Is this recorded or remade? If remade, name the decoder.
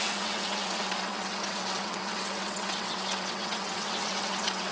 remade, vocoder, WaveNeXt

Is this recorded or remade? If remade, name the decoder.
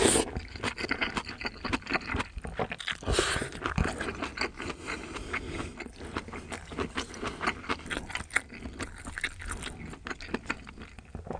recorded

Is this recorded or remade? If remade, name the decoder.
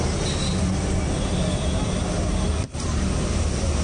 recorded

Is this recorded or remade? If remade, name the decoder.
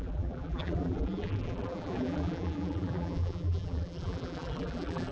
remade, vocoder, BigVGAN v2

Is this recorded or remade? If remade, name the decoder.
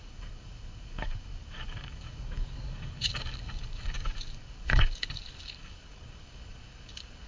remade, codec, DAC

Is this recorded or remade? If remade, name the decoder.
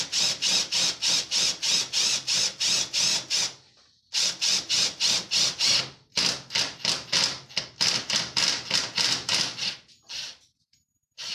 recorded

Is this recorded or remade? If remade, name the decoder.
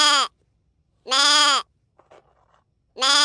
recorded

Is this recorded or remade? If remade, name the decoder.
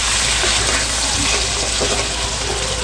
recorded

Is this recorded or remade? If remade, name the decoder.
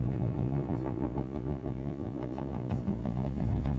remade, vocoder, Vocos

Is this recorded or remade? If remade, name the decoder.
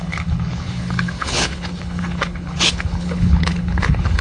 remade, codec, HILCodec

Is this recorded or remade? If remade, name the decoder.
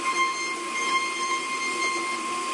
recorded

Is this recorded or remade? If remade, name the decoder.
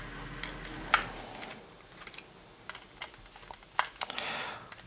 recorded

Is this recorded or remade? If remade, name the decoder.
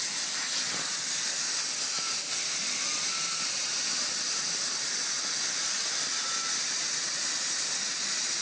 recorded